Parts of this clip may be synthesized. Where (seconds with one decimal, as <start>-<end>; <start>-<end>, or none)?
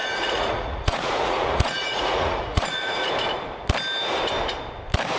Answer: 0.0-3.1